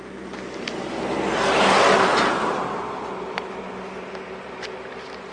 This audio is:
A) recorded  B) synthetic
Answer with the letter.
A